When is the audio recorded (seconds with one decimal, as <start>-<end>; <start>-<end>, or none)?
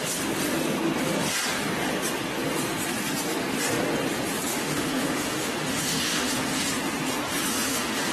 0.0-4.5; 6.7-7.5